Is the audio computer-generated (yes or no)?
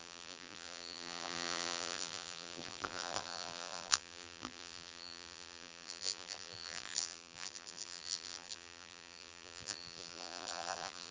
yes